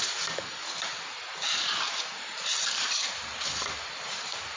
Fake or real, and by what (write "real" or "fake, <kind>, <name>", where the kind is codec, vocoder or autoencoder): fake, vocoder, BigVGAN v2